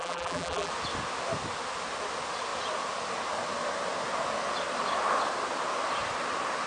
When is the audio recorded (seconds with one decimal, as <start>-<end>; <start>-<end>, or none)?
0.7-6.7